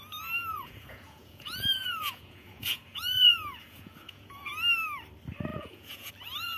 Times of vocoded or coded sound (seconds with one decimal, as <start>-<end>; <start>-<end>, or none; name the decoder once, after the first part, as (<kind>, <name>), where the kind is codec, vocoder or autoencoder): 0.5-4.5 (vocoder, Vocos); 5.5-6.1